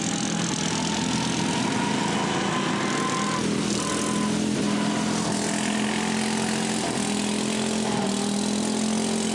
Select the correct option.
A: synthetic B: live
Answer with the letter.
B